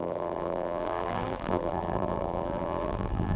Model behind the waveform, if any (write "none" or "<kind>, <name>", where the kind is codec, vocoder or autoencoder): vocoder, BigVGAN v2